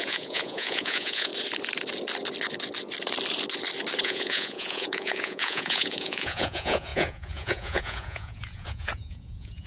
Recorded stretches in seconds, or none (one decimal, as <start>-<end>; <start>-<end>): 1.3-4.0